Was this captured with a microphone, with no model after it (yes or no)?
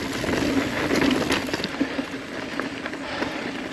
yes